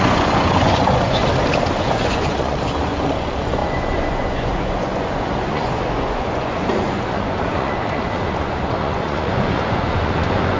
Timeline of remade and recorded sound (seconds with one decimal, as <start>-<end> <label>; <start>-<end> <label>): 0.0-1.2 remade; 1.2-1.8 recorded; 1.8-10.6 remade